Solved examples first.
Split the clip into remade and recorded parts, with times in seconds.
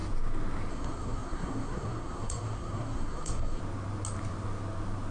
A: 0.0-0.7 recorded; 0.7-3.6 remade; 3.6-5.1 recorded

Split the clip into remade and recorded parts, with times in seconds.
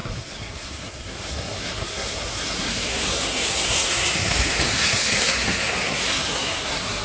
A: 0.0-7.0 remade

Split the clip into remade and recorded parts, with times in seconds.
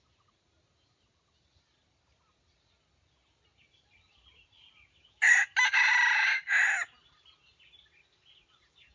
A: 0.0-8.9 recorded